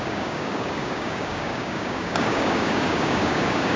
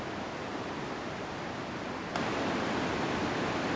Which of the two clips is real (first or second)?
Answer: second